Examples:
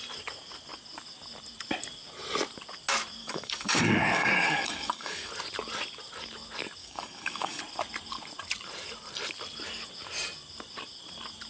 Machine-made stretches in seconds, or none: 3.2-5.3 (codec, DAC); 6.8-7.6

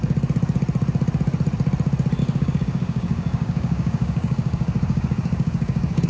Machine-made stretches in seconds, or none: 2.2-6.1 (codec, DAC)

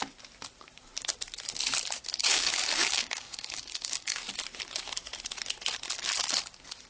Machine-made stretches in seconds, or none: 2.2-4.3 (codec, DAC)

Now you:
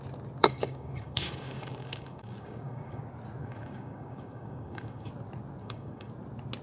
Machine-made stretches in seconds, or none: 0.4-3.0 (codec, DAC); 3.4-5.1; 5.6-6.1

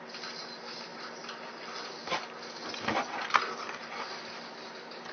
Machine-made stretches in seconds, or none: none

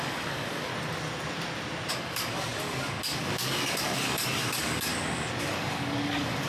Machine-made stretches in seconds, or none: 0.0-0.7 (codec, DAC); 1.9-4.9; 5.4-6.5